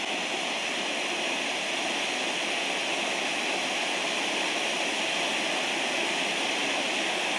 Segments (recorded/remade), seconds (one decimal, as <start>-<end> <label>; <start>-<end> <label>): 0.0-7.4 recorded